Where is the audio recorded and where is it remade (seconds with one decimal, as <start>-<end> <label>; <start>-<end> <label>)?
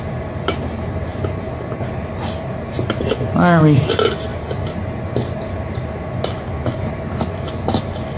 0.0-8.2 recorded